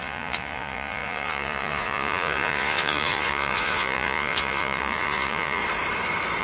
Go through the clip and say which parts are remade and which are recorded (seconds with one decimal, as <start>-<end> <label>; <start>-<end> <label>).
0.0-5.6 remade; 5.6-6.4 recorded